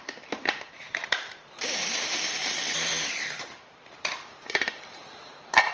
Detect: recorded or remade remade